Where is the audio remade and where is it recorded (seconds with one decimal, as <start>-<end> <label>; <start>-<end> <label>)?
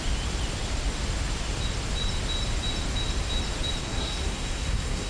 0.0-3.8 recorded; 3.8-5.1 remade